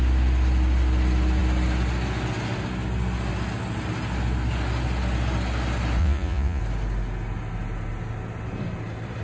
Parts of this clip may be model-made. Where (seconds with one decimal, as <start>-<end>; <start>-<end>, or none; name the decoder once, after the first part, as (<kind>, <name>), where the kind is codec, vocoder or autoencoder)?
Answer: 6.0-6.6 (vocoder, Vocos)